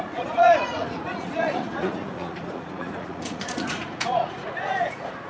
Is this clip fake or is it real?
fake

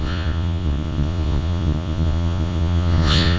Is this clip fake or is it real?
fake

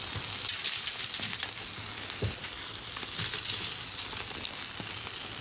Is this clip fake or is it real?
real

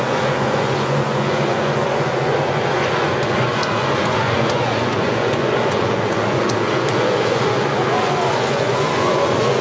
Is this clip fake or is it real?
fake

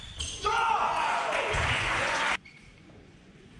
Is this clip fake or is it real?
fake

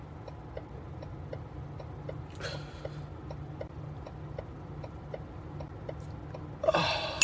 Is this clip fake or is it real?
real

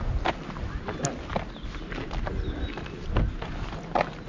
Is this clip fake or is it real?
real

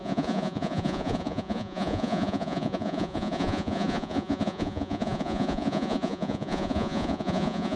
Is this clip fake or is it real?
fake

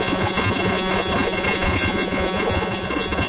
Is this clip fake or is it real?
fake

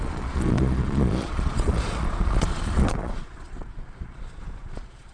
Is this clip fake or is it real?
fake